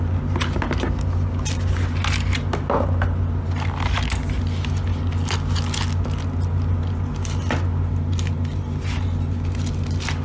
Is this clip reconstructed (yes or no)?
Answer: no